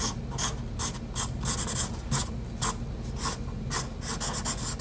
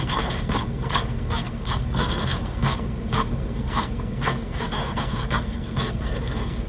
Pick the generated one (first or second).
second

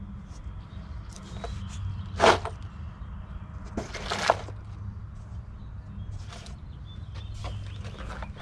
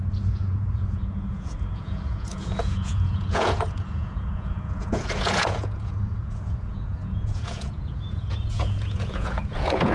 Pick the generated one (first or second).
second